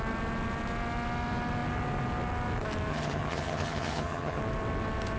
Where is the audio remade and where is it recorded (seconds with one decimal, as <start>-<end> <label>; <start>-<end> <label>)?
0.0-2.9 recorded; 2.9-4.4 remade; 4.4-5.2 recorded